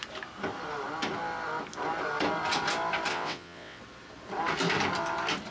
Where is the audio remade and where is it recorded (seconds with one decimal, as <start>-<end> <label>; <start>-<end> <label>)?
0.0-3.1 recorded; 3.1-3.8 remade; 3.8-5.5 recorded